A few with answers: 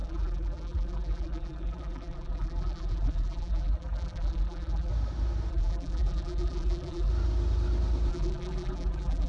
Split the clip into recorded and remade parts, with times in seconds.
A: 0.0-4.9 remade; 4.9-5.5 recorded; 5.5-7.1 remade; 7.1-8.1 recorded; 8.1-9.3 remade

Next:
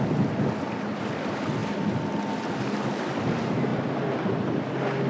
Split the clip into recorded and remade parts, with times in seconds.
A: 0.0-5.1 recorded